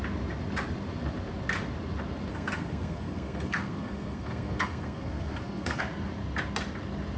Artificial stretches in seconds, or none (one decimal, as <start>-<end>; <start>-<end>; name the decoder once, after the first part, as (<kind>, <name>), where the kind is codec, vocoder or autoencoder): 2.3-5.8 (codec, SNAC)